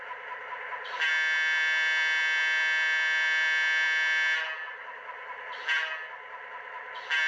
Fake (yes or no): no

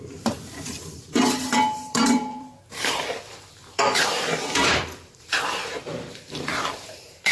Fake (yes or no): yes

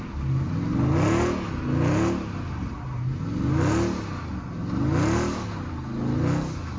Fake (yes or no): no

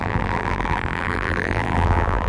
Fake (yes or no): yes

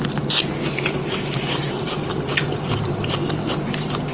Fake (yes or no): yes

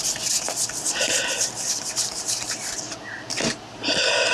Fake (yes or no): no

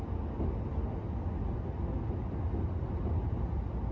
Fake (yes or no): no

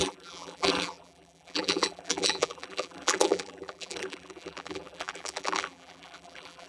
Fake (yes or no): yes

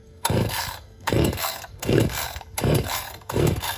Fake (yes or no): yes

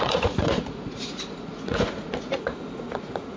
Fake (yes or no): yes